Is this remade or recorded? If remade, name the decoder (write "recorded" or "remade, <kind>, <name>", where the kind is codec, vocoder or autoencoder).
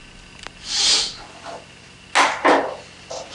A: recorded